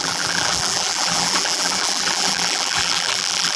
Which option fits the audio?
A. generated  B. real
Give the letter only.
A